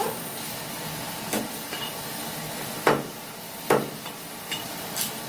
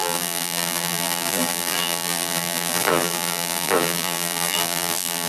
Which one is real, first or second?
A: first